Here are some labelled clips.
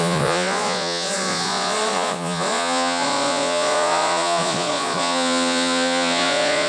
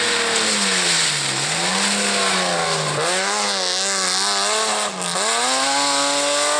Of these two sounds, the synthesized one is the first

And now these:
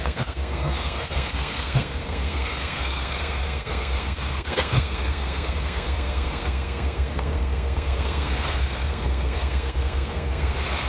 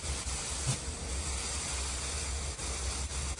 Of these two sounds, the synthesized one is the first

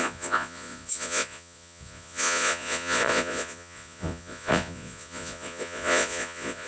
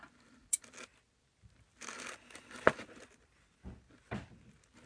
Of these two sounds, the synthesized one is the first